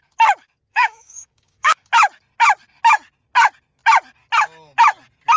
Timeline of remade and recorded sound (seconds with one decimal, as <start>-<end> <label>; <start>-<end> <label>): 0.0-0.7 recorded; 0.7-1.9 remade; 1.9-5.4 recorded